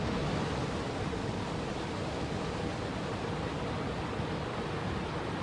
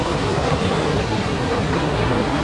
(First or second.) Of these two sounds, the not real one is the second